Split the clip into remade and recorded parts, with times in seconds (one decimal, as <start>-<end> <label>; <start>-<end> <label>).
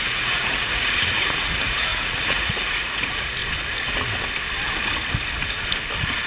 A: 0.0-3.4 remade; 3.4-6.3 recorded